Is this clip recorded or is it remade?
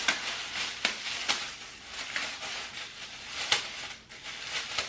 recorded